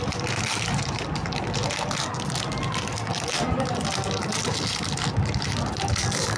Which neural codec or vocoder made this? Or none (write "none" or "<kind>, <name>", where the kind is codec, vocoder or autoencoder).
none